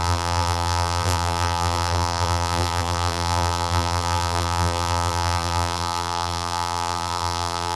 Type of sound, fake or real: fake